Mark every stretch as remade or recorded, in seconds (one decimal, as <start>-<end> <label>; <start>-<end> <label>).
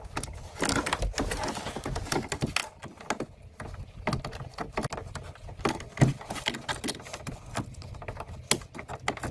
0.0-9.3 recorded